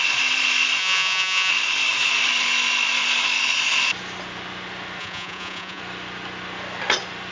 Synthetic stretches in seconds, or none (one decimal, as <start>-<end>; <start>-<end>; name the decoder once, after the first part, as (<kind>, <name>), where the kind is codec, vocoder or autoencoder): 0.8-1.5 (vocoder, Vocos); 5.0-5.8